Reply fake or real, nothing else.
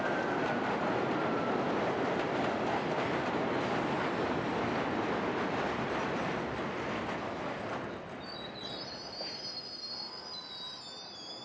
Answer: real